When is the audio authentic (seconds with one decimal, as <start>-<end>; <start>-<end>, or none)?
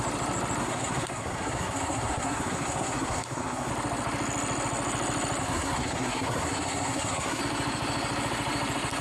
0.0-0.6; 3.7-5.4; 7.4-9.0